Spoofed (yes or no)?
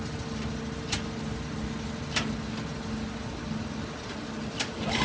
no